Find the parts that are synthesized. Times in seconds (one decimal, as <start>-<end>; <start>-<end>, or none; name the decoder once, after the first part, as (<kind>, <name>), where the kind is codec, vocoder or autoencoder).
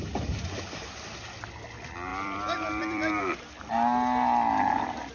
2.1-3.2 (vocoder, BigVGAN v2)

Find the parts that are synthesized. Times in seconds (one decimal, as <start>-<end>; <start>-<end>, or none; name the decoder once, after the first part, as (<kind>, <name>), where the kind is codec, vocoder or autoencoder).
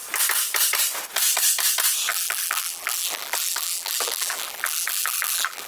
2.1-5.7 (vocoder, BigVGAN v2)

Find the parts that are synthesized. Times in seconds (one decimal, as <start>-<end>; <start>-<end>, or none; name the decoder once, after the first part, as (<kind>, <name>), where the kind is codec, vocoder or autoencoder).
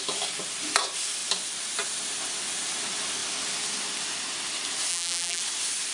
4.9-5.4 (vocoder, BigVGAN v2)